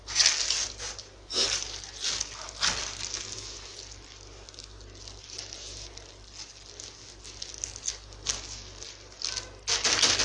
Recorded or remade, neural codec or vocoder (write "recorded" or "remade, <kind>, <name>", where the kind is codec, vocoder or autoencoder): recorded